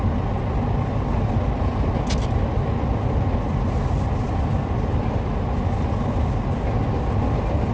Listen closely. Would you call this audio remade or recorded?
recorded